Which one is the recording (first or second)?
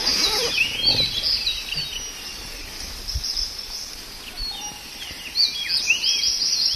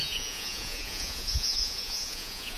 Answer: first